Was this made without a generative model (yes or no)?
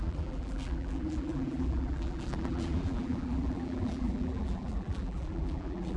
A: no